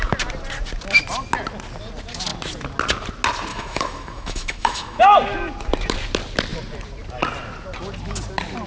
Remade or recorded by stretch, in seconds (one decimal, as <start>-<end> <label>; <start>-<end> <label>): 0.0-3.5 recorded; 3.5-5.0 remade; 5.0-8.7 recorded